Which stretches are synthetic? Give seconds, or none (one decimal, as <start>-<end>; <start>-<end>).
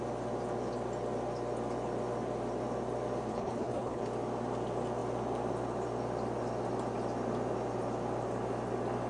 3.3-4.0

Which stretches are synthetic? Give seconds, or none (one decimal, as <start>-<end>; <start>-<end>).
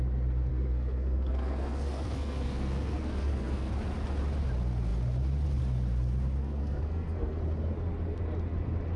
0.5-3.7; 6.4-7.4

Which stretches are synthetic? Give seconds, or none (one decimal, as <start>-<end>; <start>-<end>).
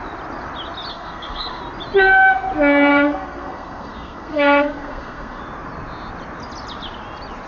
0.9-1.6; 2.9-5.4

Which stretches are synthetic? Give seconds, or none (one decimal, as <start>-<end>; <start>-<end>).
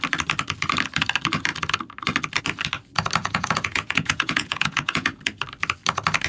3.2-5.2